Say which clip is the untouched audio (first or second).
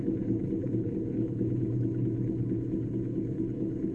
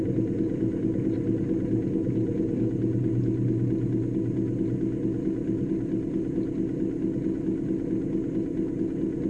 second